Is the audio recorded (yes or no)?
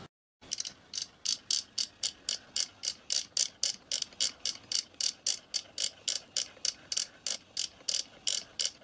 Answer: yes